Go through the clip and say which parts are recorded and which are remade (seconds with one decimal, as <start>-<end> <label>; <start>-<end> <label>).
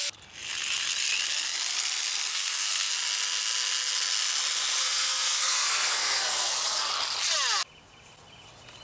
0.0-2.3 recorded; 2.3-2.9 remade; 2.9-4.8 recorded; 4.8-6.9 remade; 6.9-8.8 recorded